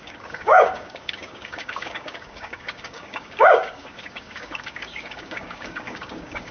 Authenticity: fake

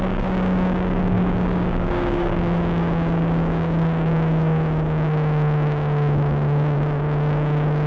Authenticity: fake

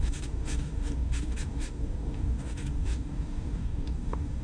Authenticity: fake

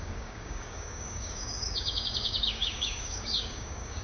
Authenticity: fake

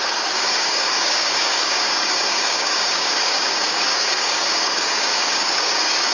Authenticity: fake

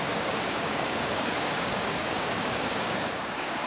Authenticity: fake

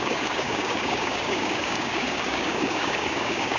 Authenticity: fake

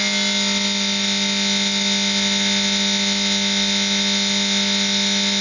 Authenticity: real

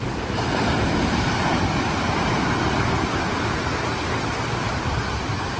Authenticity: real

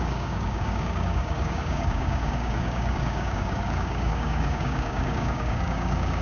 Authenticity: fake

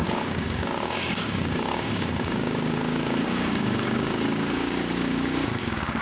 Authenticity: fake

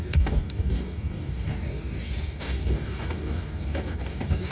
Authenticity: fake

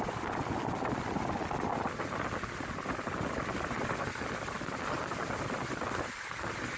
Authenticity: real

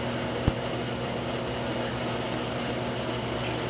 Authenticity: real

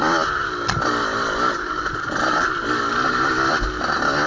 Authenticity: real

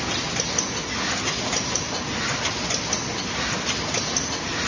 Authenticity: real